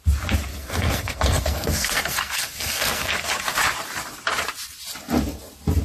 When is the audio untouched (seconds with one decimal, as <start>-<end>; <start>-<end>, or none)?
0.0-0.5; 3.3-5.8